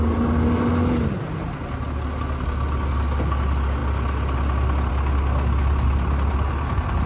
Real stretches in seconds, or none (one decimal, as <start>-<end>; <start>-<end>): 0.0-7.1